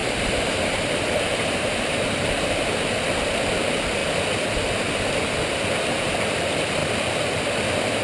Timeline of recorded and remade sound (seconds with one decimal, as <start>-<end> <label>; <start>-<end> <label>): 0.0-2.5 remade; 2.5-8.0 recorded